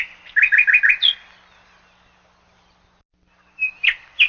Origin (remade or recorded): recorded